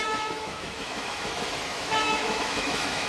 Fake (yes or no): yes